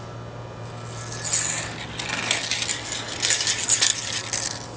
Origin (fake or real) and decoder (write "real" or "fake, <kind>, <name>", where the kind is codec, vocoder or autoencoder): real